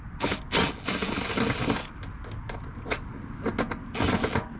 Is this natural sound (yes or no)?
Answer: yes